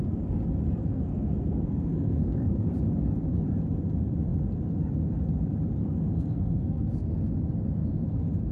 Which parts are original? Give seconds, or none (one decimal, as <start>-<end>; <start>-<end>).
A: 0.0-0.8; 2.7-5.8; 7.3-7.8